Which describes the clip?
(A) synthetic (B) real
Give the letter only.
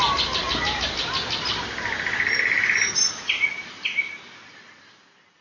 B